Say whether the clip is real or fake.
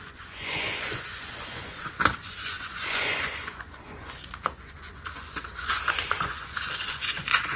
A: fake